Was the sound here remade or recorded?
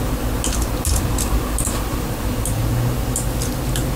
recorded